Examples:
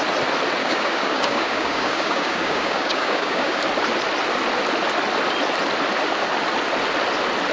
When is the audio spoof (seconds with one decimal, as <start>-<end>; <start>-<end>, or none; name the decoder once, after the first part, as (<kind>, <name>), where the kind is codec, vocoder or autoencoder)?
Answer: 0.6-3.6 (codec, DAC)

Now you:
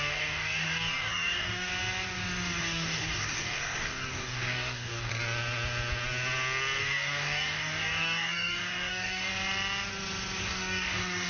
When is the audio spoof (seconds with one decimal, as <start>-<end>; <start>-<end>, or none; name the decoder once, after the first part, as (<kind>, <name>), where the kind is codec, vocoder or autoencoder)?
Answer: 0.0-1.7 (codec, DAC); 2.6-5.1; 6.8-9.3; 10.4-11.3

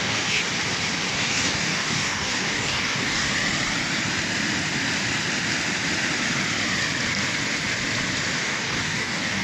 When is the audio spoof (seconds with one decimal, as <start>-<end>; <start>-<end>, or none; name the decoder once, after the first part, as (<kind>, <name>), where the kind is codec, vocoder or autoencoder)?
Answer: 0.0-0.4 (codec, DAC); 1.1-3.3; 8.4-9.4